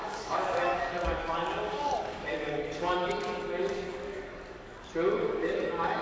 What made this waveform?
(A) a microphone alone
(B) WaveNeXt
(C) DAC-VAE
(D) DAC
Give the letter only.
D